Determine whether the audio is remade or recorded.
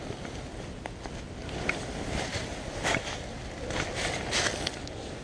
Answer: recorded